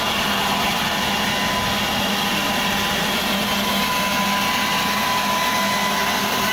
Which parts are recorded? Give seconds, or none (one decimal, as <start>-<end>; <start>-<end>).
0.0-2.3; 3.9-6.0